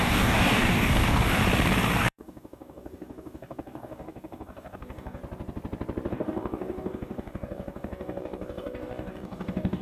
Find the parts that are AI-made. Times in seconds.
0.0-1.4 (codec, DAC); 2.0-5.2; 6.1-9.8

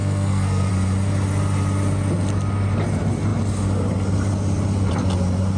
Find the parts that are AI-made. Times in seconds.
0.0-0.7 (codec, SNAC)

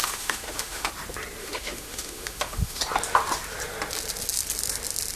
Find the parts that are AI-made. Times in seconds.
0.0-0.9 (autoencoder, DAC-VAE); 1.4-2.8